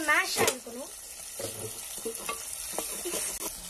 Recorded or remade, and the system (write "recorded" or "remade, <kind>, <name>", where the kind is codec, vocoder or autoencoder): recorded